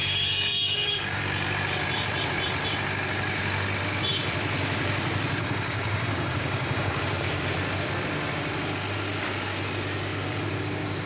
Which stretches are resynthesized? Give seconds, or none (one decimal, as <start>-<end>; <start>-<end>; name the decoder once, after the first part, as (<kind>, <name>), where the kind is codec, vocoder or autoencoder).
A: 0.0-1.2 (codec, DAC); 5.4-7.0